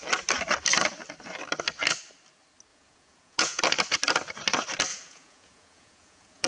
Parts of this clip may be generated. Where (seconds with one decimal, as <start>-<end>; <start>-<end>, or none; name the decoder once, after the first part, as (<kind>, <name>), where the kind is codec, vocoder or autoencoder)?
2.7-3.6 (vocoder, Vocos); 4.9-6.5